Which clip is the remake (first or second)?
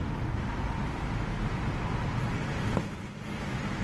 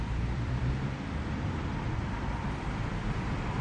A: second